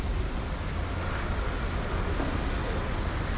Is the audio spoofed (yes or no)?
no